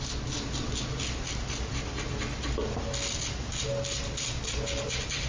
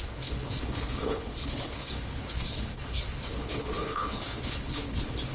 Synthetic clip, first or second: second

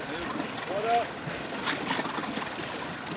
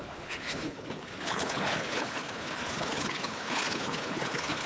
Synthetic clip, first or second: second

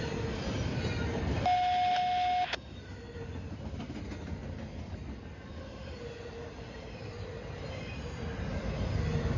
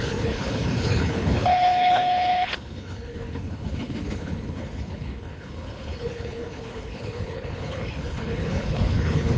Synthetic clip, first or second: second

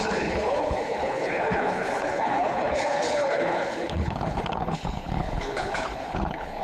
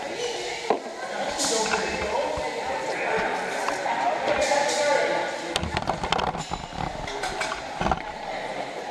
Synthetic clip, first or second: first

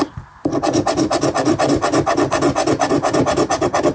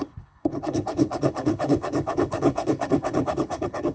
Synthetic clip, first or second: second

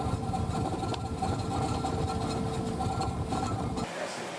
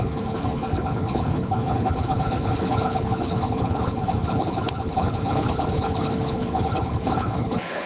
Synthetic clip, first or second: second